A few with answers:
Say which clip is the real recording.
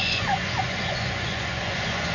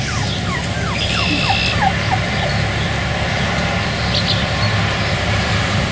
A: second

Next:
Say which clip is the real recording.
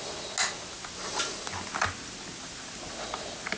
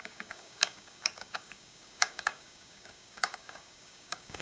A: first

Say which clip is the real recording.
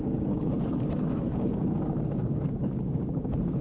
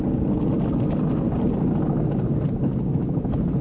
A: second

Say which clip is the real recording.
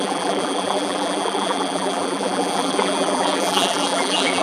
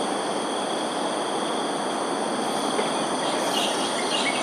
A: second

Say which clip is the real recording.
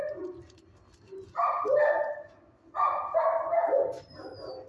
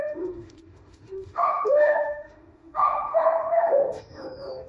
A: first